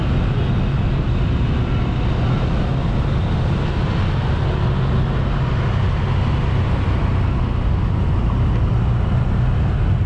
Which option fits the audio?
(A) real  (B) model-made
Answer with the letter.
A